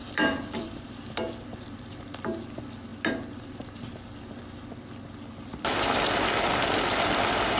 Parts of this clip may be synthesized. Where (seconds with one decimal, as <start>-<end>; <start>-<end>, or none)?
0.0-2.0; 5.5-6.1